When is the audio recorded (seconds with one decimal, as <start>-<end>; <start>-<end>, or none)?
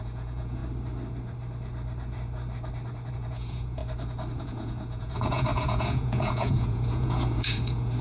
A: 0.6-3.1; 3.8-4.4